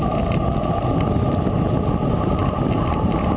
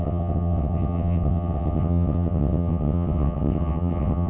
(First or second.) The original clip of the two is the first